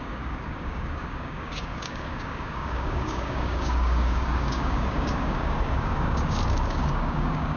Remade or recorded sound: remade